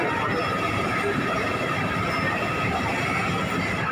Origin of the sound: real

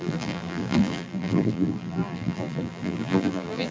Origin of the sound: fake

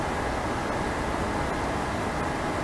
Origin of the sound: real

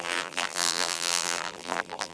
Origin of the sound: fake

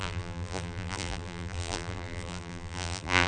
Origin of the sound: fake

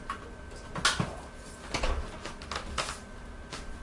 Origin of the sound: real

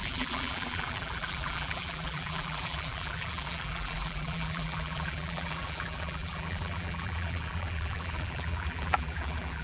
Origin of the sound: fake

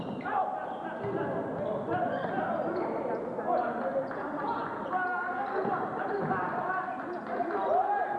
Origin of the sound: real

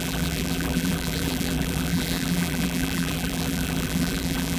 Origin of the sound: fake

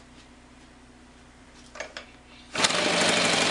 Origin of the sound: fake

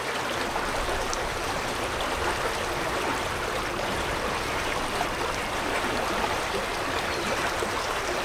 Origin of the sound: fake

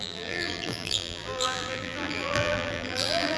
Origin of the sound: fake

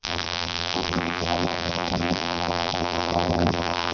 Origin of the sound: fake